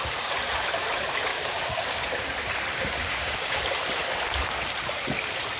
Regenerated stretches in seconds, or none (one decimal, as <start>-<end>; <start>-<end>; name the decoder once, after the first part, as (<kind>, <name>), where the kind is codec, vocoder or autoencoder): 1.3-2.0 (codec, DAC); 2.7-3.6